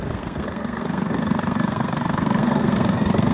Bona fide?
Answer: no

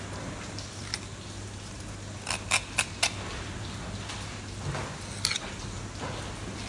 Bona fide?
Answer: yes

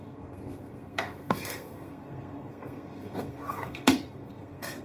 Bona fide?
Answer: no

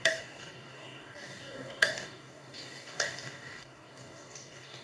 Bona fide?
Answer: no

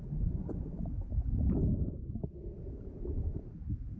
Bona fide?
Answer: yes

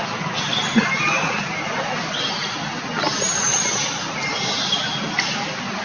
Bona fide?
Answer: yes